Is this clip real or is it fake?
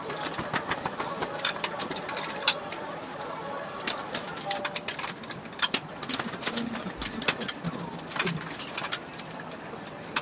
fake